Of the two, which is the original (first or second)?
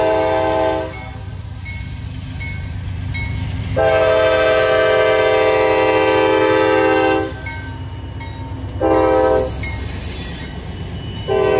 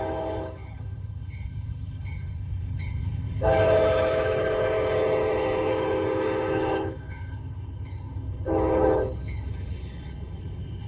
first